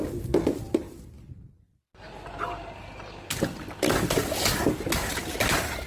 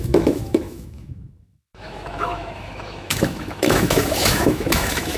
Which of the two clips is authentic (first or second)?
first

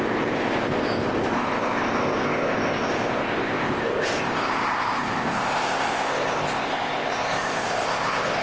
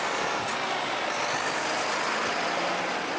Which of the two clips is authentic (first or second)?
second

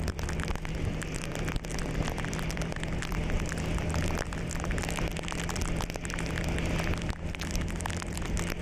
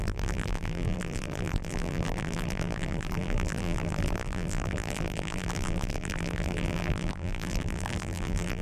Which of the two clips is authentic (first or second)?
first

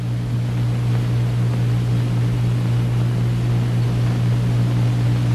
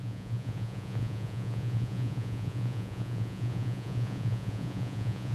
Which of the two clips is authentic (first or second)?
first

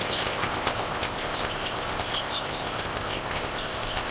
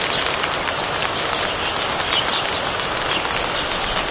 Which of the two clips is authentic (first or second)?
second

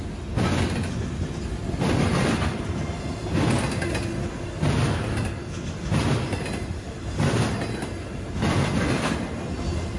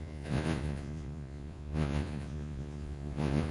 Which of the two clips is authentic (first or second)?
first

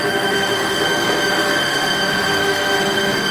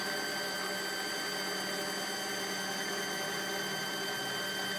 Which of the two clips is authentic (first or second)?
second